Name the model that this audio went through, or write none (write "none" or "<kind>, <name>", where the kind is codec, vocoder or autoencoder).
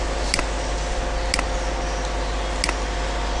none